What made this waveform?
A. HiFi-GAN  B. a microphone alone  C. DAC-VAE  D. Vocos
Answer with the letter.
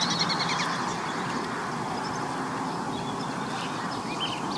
B